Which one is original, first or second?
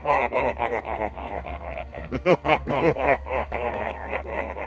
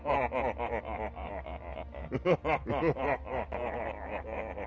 second